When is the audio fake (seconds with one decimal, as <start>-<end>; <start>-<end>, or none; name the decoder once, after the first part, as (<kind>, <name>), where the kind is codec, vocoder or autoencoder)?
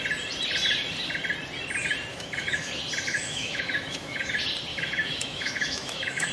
2.1-2.7 (autoencoder, DAC-VAE); 3.1-4.3; 4.7-6.3